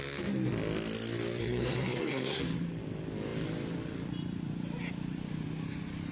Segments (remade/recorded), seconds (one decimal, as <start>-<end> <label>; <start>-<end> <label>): 0.0-1.4 recorded; 1.4-2.4 remade; 2.4-6.1 recorded